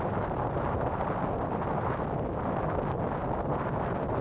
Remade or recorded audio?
recorded